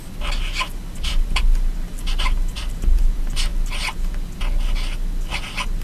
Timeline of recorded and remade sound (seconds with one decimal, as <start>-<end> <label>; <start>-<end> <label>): 0.0-5.8 recorded